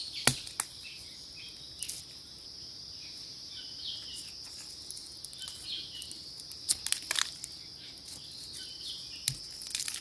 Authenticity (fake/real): real